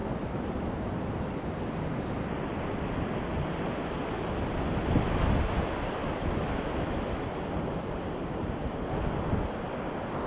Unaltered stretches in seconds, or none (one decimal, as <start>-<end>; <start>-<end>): 0.0-6.0; 7.4-10.3